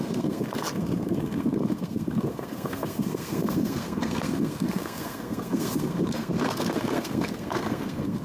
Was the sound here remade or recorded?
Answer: remade